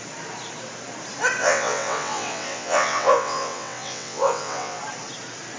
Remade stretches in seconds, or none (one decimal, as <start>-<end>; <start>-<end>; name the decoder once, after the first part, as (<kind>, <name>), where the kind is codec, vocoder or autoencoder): 1.4-4.8 (vocoder, WaveNeXt)